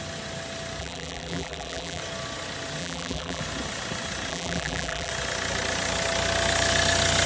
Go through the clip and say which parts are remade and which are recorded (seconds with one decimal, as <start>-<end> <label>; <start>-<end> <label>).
0.0-0.8 recorded; 0.8-2.0 remade; 2.0-2.8 recorded; 2.8-3.4 remade; 3.4-4.3 recorded; 4.3-5.1 remade; 5.1-7.3 recorded

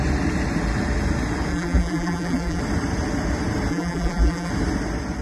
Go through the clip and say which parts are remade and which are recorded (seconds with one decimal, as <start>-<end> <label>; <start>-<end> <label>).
0.0-1.5 recorded; 1.5-2.6 remade; 2.6-3.7 recorded; 3.7-4.5 remade; 4.5-5.2 recorded

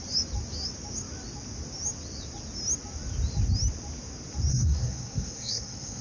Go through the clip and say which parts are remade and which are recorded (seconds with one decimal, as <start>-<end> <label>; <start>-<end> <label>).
0.0-4.5 recorded; 4.5-6.0 remade

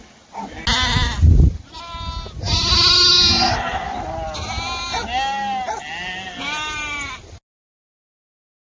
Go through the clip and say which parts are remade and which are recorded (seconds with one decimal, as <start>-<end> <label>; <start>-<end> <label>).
0.0-8.7 recorded

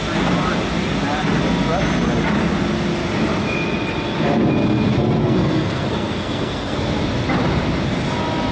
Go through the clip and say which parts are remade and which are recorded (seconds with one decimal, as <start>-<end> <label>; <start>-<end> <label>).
0.0-5.2 recorded; 5.2-7.0 remade; 7.0-8.5 recorded

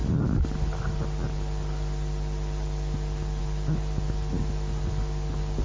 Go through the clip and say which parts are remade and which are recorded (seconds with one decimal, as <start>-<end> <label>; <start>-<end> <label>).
0.0-5.6 recorded

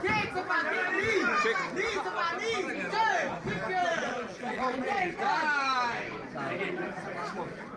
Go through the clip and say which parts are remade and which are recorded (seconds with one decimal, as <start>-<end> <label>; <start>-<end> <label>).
0.0-3.8 recorded; 3.8-5.2 remade; 5.2-7.8 recorded